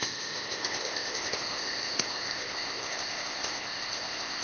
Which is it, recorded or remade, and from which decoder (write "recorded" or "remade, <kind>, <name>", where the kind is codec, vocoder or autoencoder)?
remade, codec, ZipCodec